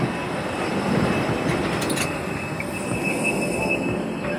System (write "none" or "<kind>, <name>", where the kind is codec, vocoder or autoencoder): none